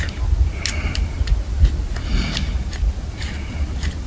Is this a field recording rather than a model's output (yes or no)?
yes